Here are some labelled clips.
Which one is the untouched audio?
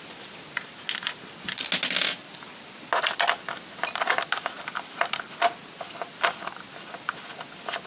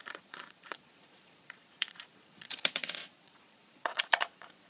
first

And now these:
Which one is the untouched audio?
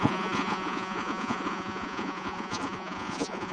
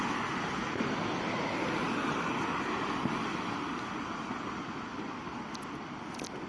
second